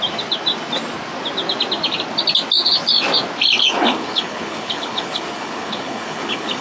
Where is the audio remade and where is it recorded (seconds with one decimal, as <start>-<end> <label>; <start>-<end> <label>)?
0.0-3.6 recorded; 3.6-6.6 remade